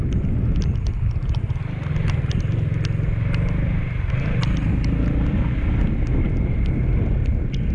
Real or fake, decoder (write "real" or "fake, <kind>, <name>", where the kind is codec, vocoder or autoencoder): real